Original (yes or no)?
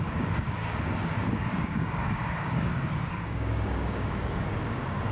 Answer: no